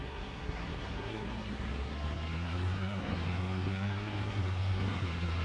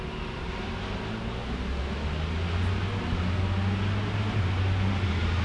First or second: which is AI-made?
first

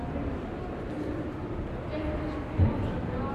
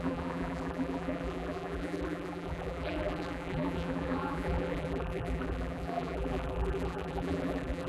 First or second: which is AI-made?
second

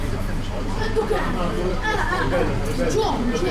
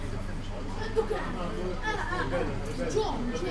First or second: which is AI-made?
first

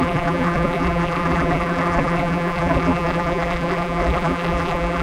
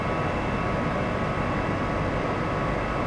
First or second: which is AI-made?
first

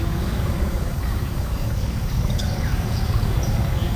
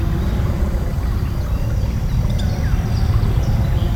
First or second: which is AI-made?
first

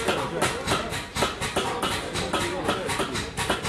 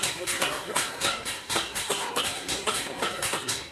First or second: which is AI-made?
second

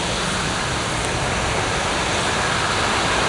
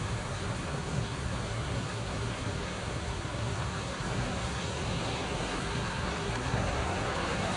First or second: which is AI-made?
second